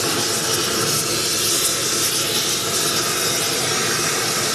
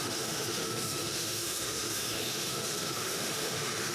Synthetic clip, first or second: second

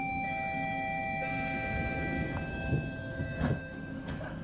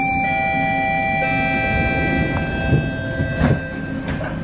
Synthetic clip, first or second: first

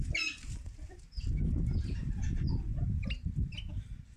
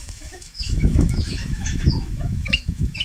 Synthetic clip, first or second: second